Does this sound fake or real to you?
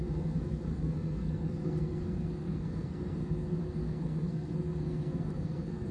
fake